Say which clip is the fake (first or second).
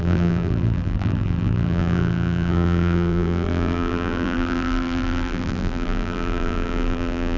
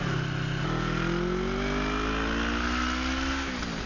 first